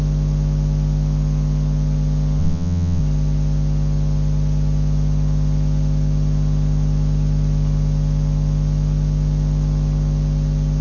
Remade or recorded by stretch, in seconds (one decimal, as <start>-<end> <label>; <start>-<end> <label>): 0.0-2.4 recorded; 2.4-3.0 remade; 3.0-10.8 recorded